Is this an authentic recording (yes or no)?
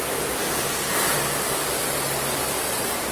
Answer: yes